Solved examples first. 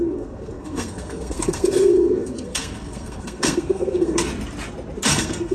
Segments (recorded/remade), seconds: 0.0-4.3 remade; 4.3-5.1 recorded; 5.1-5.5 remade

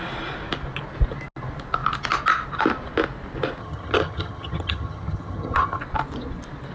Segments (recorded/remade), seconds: 0.0-3.6 recorded; 3.6-5.8 remade; 5.8-6.7 recorded

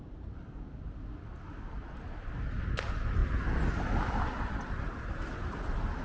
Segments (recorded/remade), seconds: 0.0-6.0 recorded

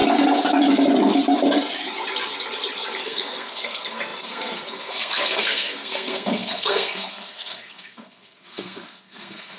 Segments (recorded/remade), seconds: 0.0-3.0 recorded; 3.0-9.6 remade

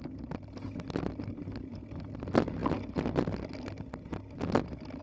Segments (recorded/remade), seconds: 0.0-5.0 recorded